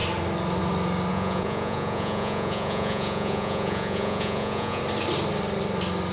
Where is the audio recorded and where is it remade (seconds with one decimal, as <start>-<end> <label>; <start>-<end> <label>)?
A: 0.0-1.1 recorded; 1.1-4.8 remade; 4.8-6.1 recorded